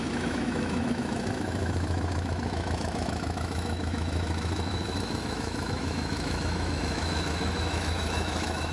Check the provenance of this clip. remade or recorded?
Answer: remade